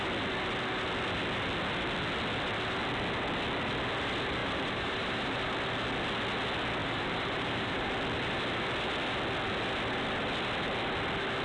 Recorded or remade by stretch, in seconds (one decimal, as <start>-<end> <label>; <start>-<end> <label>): 0.0-4.4 recorded; 4.4-5.5 remade; 5.5-6.8 recorded; 6.8-7.9 remade; 7.9-11.4 recorded